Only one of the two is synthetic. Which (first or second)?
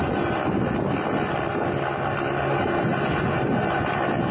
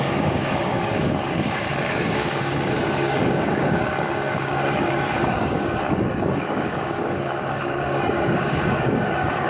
second